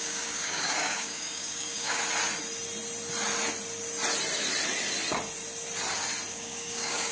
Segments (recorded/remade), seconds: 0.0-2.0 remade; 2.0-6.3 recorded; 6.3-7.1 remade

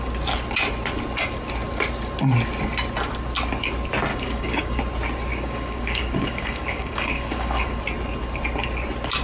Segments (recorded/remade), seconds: 0.0-4.1 recorded; 4.1-4.8 remade; 4.8-5.3 recorded; 5.3-7.8 remade; 7.8-9.2 recorded

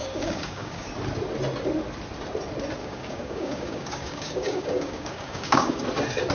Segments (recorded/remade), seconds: 0.0-0.9 remade; 0.9-2.8 recorded; 2.8-5.8 remade; 5.8-6.3 recorded